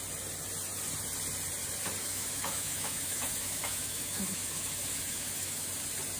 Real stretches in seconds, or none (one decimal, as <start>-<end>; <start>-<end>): 0.0-2.0; 5.7-6.2